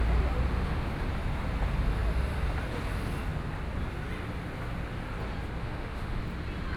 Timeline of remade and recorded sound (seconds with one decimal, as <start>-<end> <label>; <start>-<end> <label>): 0.0-0.5 recorded; 0.5-1.1 remade; 1.1-5.6 recorded; 5.6-6.2 remade; 6.2-6.8 recorded